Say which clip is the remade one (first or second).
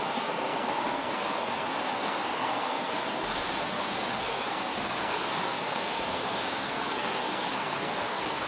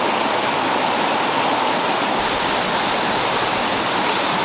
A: first